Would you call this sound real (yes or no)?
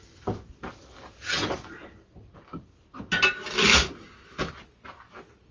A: yes